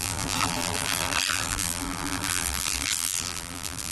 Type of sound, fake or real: fake